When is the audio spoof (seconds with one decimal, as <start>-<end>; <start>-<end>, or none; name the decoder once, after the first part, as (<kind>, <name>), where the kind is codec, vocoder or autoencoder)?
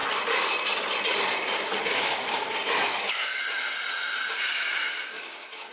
1.4-3.4 (codec, DAC); 4.9-5.7